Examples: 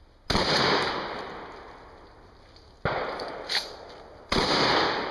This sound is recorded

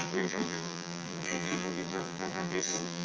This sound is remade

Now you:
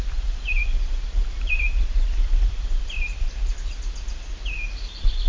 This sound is remade